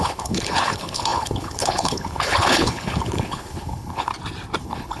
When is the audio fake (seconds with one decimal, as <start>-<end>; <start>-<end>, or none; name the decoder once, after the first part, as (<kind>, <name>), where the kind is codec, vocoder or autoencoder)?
0.0-4.1 (codec, HILCodec); 4.6-5.0